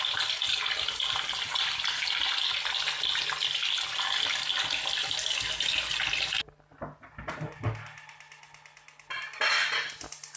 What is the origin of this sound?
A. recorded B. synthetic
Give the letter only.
A